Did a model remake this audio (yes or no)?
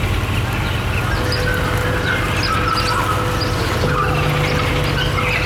no